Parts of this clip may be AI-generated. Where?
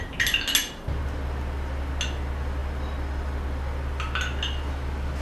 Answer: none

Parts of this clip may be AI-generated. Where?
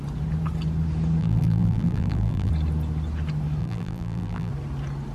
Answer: 1.2-2.5 (vocoder, BigVGAN v2); 3.6-4.5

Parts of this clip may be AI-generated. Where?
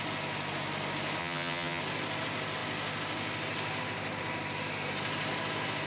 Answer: 1.2-1.8 (vocoder, HiFi-GAN)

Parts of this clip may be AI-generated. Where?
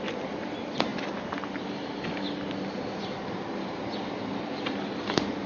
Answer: none